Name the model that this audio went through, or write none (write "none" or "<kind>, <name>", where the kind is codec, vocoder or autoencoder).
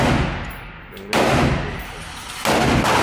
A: none